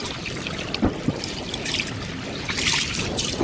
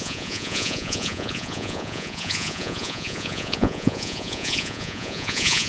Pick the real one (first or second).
first